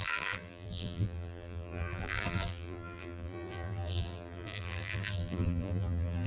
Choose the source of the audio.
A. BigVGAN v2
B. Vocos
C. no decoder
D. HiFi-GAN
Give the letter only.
A